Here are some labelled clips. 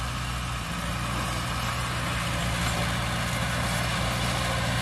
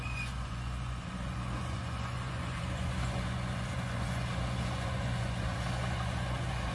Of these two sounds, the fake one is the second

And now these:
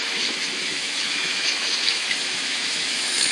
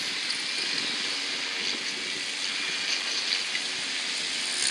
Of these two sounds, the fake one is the first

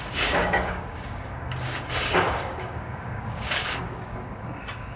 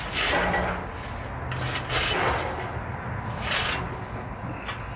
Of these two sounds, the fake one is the first